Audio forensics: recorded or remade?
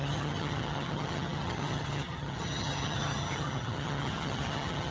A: remade